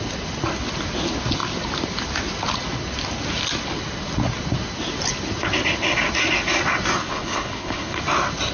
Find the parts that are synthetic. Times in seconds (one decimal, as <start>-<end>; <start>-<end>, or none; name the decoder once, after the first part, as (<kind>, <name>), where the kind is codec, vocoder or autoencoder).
7.0-8.0 (codec, HILCodec)